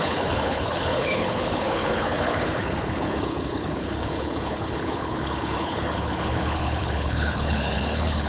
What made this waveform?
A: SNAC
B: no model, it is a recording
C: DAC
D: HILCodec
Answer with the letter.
D